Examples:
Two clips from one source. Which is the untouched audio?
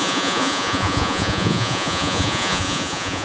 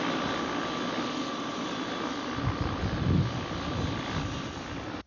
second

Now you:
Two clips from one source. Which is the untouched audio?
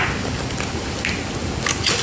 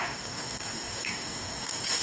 first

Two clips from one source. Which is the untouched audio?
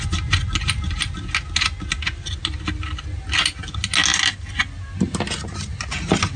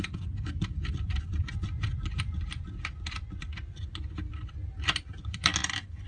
first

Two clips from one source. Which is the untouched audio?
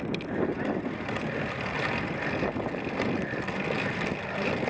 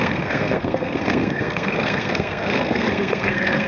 first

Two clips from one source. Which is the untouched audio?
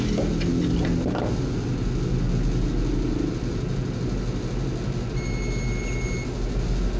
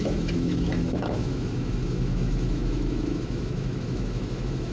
first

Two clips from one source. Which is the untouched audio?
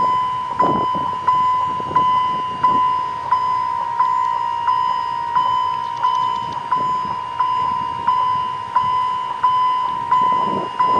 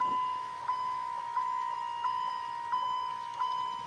first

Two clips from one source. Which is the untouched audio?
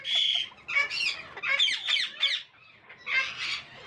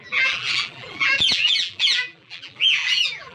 first